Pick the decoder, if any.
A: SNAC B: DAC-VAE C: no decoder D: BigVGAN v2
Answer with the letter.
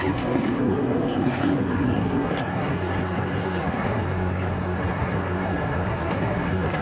A